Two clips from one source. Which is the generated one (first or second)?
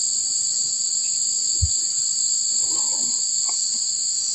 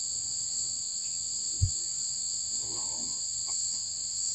second